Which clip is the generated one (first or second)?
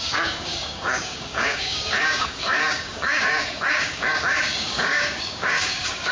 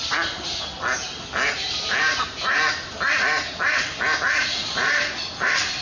first